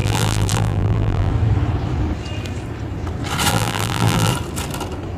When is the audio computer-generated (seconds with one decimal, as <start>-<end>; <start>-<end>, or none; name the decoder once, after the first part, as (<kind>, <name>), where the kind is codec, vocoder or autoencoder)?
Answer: 0.0-1.3 (vocoder, BigVGAN v2); 3.5-4.3